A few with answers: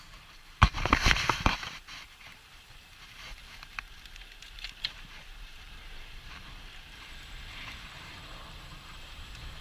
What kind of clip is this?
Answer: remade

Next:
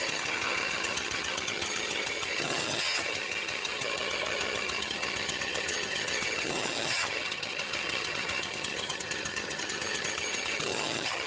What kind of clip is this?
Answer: remade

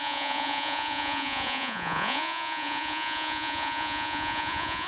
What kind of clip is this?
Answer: remade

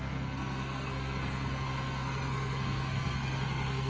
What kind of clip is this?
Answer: remade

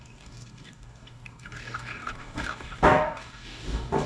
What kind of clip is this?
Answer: remade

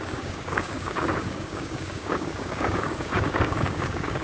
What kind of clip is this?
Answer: remade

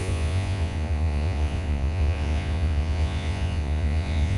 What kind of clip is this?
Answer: remade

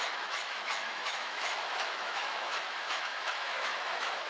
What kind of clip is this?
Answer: remade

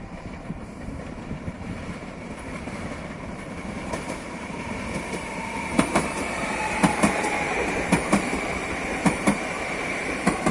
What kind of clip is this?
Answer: remade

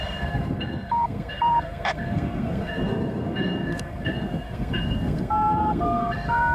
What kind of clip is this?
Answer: remade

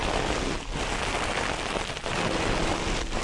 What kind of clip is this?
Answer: recorded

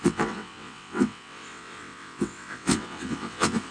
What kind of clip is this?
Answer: remade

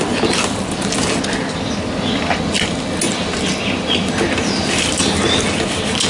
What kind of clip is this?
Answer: recorded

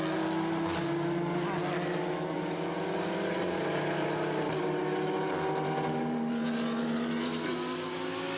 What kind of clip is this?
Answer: recorded